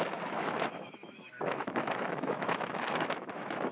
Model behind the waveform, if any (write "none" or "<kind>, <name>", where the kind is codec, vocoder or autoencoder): autoencoder, DAC-VAE